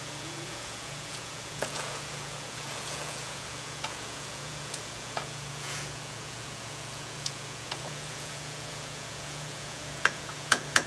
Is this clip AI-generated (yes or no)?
yes